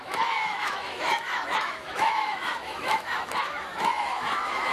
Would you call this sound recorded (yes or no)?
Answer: no